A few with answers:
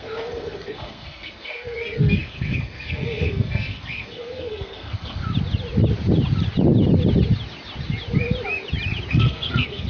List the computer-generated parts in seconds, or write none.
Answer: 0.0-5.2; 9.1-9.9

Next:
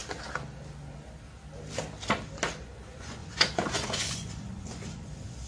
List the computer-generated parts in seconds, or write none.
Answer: 2.6-5.5

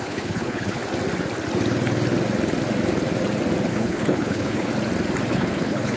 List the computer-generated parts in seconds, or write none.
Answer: 0.0-0.8; 3.7-4.7; 5.3-6.0

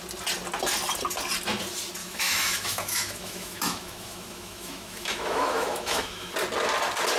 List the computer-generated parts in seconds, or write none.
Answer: 2.0-6.3